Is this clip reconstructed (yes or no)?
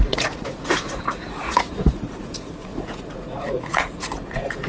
yes